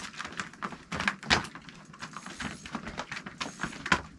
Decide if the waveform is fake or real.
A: real